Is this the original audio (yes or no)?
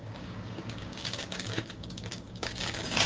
no